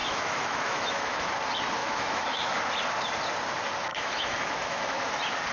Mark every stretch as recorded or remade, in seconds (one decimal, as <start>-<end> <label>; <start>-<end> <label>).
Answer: 0.0-1.3 remade; 1.3-1.8 recorded; 1.8-2.6 remade; 2.6-3.9 recorded; 3.9-5.1 remade; 5.1-5.5 recorded